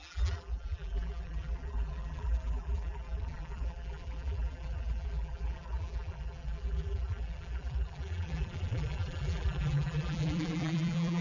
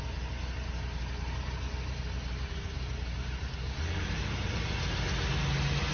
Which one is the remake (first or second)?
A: first